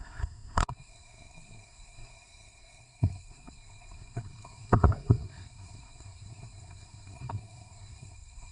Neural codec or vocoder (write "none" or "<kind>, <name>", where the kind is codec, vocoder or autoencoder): codec, SNAC